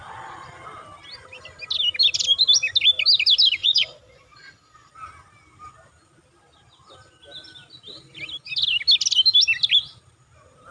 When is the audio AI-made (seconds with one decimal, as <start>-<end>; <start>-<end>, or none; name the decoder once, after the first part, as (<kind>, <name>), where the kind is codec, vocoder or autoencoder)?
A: 3.6-4.9 (vocoder, Vocos)